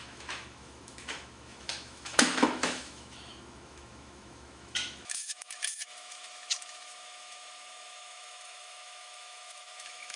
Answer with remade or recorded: remade